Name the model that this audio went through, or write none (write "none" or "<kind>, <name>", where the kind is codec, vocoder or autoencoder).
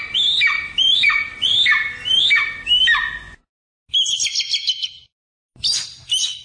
none